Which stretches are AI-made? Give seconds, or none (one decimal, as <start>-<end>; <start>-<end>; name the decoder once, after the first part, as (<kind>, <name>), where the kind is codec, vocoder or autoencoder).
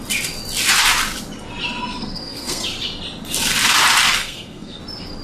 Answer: 2.0-2.6 (codec, SNAC); 4.2-4.8